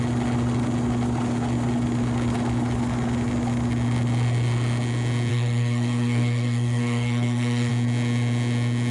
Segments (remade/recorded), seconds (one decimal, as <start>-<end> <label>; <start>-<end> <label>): 0.0-5.3 recorded; 5.3-7.7 remade; 7.7-8.9 recorded